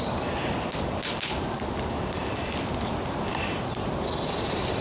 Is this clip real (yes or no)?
yes